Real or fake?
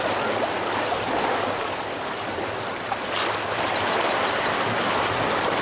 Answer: real